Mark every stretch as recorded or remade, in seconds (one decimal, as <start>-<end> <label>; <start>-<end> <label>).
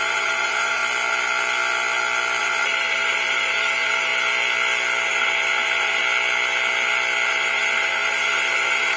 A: 0.0-0.8 remade; 0.8-2.4 recorded; 2.4-4.1 remade; 4.1-5.1 recorded; 5.1-6.0 remade; 6.0-7.3 recorded; 7.3-9.0 remade